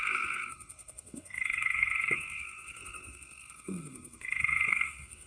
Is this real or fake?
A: fake